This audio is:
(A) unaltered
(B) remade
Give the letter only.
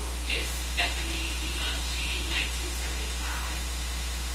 B